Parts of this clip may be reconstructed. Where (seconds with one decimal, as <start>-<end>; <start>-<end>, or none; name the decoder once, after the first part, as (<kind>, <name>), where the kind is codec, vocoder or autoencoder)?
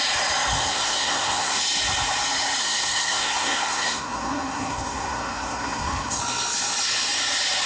0.7-1.6 (codec, SNAC); 2.6-6.2